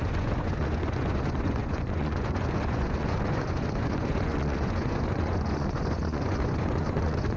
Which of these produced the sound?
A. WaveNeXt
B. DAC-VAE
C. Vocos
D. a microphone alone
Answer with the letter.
C